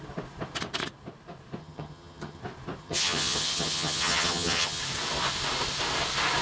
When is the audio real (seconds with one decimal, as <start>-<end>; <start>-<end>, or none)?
0.0-1.6; 2.4-2.8; 4.8-6.4